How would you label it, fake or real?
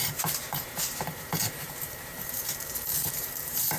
fake